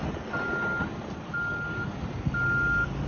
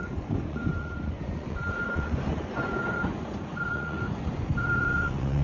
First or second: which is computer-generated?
second